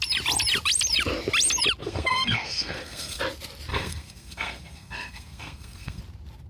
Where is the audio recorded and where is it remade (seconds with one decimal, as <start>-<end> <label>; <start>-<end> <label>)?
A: 0.0-1.8 recorded; 1.8-3.2 remade; 3.2-3.7 recorded; 3.7-6.0 remade; 6.0-6.5 recorded